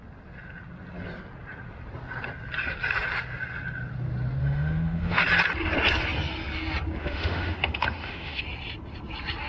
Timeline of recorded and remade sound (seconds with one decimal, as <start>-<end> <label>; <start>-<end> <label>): 0.0-4.4 recorded; 4.4-5.2 remade; 5.2-7.0 recorded; 7.0-8.4 remade; 8.4-9.5 recorded